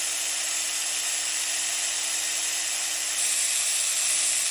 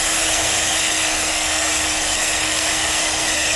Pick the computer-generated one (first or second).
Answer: second